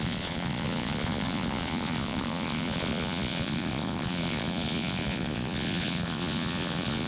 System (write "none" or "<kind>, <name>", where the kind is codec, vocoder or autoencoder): vocoder, Vocos